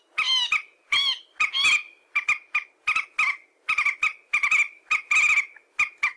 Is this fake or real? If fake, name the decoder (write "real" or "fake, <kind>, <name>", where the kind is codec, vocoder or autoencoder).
real